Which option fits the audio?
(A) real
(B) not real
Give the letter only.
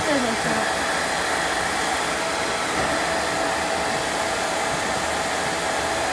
A